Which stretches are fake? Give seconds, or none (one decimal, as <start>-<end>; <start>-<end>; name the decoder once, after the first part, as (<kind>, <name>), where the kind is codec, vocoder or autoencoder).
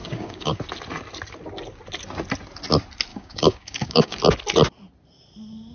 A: 0.0-0.6 (codec, DAC); 3.1-4.2